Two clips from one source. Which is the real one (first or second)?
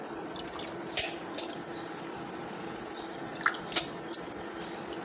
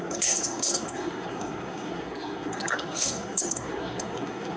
first